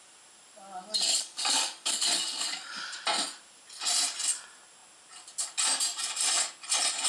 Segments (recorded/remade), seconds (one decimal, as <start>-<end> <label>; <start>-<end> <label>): 0.0-0.9 recorded; 0.9-2.8 remade; 2.8-7.1 recorded